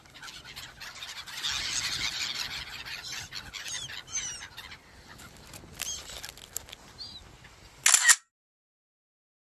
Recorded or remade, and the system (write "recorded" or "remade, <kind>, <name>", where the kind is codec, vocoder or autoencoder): recorded